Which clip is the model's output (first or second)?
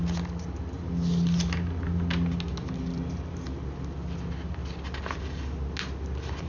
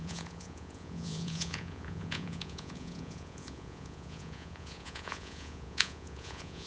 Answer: second